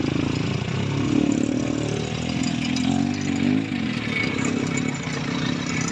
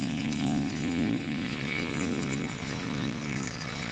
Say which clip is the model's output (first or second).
second